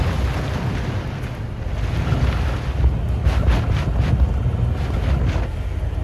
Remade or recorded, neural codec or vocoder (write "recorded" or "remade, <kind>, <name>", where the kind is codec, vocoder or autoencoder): recorded